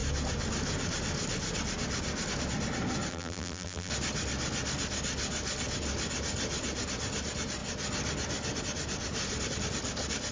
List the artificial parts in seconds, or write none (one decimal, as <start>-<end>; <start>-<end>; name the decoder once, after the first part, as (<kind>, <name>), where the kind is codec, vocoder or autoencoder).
3.1-3.9 (vocoder, BigVGAN v2)